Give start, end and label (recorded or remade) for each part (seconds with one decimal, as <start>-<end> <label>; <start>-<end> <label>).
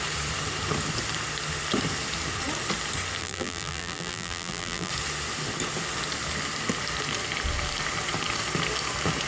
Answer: 0.0-3.2 recorded; 3.2-4.9 remade; 4.9-9.3 recorded